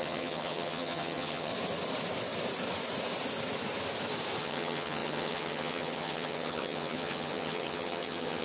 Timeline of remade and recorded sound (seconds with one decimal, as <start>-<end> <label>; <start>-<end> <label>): 0.0-1.5 remade; 1.5-4.4 recorded; 4.4-8.4 remade

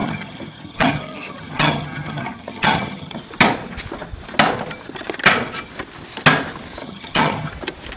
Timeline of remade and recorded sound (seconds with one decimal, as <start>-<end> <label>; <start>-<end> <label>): 0.0-3.2 remade; 3.2-6.8 recorded; 6.8-7.5 remade; 7.5-8.0 recorded

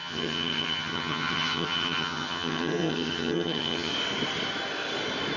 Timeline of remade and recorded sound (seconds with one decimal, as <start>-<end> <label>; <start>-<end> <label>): 0.0-3.9 remade; 3.9-5.4 recorded

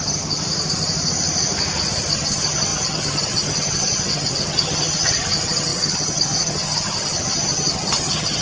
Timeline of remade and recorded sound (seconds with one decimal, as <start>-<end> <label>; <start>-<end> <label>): 0.0-0.4 remade; 0.4-2.1 recorded; 2.1-8.4 remade

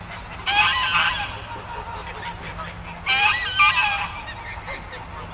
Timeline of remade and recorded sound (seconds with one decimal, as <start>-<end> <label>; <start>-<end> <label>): 0.0-5.3 recorded

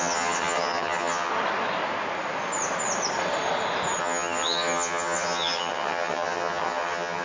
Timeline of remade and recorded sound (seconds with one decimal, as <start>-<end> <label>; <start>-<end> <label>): 0.0-1.3 remade; 1.3-4.0 recorded; 4.0-7.2 remade

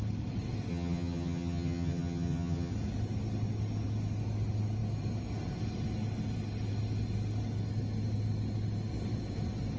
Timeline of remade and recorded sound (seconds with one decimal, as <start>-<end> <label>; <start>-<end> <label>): 0.0-0.7 recorded; 0.7-2.7 remade; 2.7-9.8 recorded